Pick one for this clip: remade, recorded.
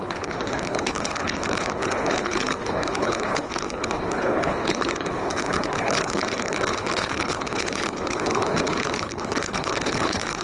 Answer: remade